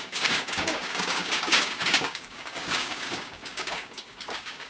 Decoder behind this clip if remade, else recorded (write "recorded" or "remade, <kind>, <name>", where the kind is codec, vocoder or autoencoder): remade, codec, DAC